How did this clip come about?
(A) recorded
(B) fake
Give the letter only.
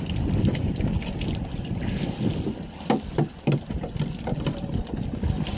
A